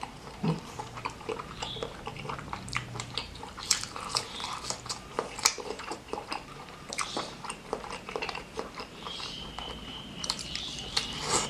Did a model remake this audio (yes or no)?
yes